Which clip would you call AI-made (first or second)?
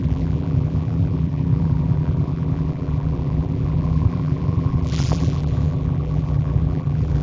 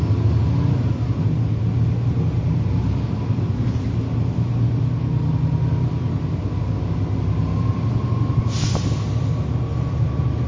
first